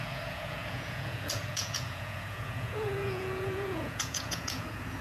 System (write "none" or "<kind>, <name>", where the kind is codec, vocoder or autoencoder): vocoder, Vocos